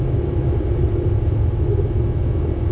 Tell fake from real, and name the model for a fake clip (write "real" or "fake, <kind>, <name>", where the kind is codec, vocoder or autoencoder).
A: real